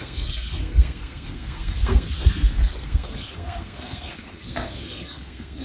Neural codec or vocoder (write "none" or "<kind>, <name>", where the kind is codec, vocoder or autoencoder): codec, SNAC